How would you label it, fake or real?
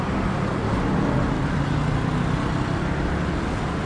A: real